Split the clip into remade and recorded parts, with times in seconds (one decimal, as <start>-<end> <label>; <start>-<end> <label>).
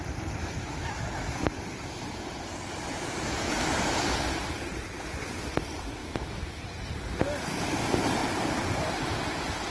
0.0-0.4 recorded; 0.4-1.0 remade; 1.0-6.0 recorded; 6.0-6.6 remade; 6.6-9.7 recorded